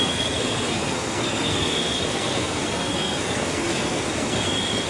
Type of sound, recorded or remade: remade